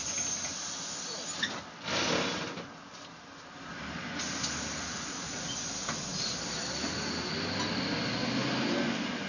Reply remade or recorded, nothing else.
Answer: recorded